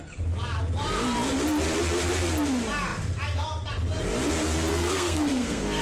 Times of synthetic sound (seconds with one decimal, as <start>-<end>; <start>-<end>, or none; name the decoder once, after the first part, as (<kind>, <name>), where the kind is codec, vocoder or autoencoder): 4.7-5.8 (codec, SNAC)